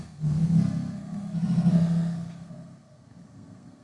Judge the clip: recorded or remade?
remade